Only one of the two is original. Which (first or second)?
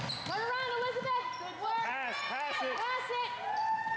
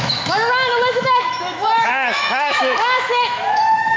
first